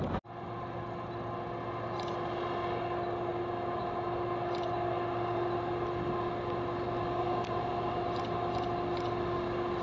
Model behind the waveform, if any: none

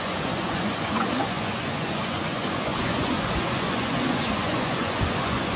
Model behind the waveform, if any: vocoder, Vocos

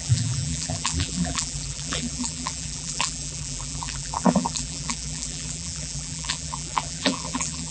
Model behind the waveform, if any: vocoder, BigVGAN v2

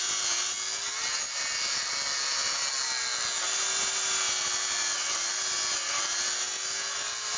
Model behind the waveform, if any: none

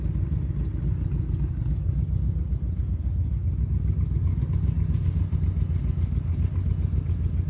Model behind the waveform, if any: none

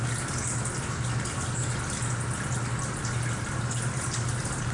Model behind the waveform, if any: none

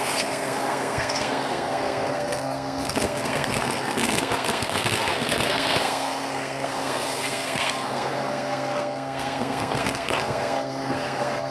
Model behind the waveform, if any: codec, SNAC